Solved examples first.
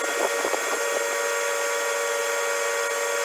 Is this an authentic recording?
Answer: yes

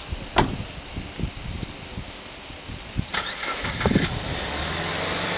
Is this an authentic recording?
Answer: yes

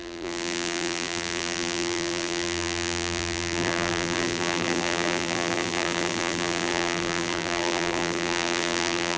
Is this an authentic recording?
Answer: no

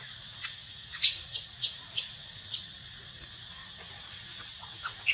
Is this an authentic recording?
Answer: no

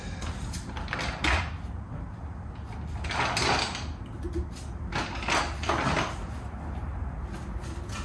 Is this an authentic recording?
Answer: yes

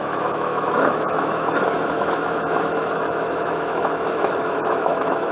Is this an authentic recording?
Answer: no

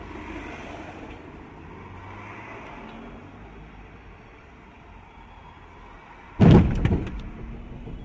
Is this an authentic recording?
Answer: yes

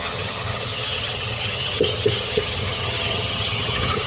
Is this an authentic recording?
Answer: no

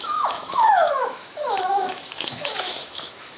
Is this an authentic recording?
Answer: no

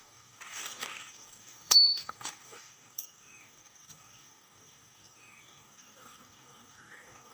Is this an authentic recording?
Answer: no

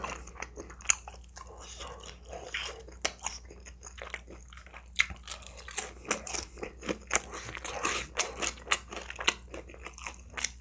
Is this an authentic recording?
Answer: yes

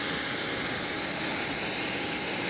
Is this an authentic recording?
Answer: yes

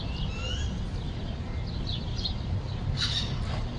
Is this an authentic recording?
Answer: yes